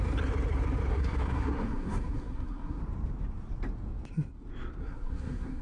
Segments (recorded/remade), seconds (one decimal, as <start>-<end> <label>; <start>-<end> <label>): 0.0-0.9 recorded; 0.9-2.8 remade; 2.8-4.8 recorded; 4.8-5.6 remade